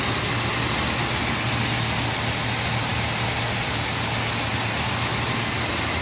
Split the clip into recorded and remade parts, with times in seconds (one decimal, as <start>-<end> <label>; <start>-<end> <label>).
0.0-6.0 recorded

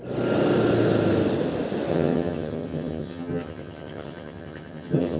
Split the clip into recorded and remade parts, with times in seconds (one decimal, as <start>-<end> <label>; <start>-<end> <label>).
0.0-1.9 recorded; 1.9-5.2 remade

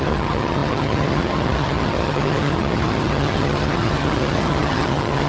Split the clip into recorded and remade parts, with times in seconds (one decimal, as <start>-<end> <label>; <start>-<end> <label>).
0.0-5.3 remade

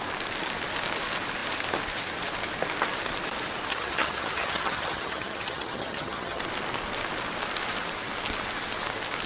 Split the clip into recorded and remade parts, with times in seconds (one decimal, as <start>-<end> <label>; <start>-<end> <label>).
0.0-3.7 recorded; 3.7-6.4 remade; 6.4-9.3 recorded

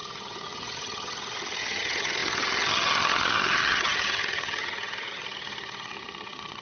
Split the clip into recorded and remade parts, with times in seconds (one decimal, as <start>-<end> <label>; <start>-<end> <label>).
0.0-6.6 remade

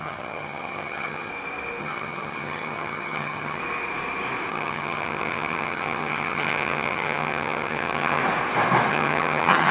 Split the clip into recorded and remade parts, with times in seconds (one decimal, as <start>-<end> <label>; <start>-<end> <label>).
0.0-1.3 remade; 1.3-1.8 recorded; 1.8-3.6 remade; 3.6-4.5 recorded; 4.5-8.2 remade; 8.2-8.9 recorded; 8.9-9.7 remade

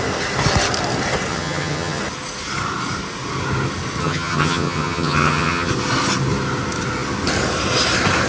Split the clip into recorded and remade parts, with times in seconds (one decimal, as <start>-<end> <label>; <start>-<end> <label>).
0.0-1.3 recorded; 1.3-2.0 remade; 2.0-4.0 recorded; 4.0-5.7 remade; 5.7-8.3 recorded

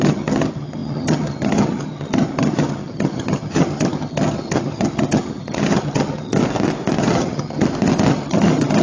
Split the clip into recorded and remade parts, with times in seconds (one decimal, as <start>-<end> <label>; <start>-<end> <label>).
0.0-6.4 remade; 6.4-7.0 recorded; 7.0-7.6 remade; 7.6-8.1 recorded; 8.1-8.8 remade